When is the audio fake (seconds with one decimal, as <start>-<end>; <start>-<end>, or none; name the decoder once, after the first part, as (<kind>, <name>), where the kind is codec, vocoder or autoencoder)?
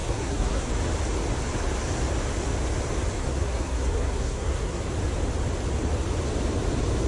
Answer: 0.0-0.7 (codec, SNAC); 3.2-4.8